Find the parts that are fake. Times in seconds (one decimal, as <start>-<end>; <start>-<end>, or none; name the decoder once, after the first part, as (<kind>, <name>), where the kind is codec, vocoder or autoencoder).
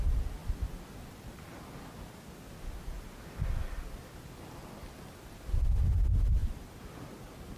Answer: none